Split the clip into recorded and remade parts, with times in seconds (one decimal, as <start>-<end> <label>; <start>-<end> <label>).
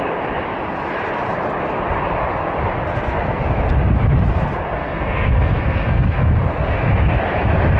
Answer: 0.0-2.9 recorded; 2.9-3.4 remade; 3.4-4.3 recorded; 4.3-6.3 remade; 6.3-7.8 recorded